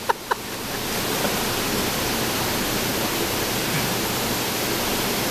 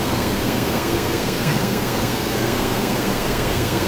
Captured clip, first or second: first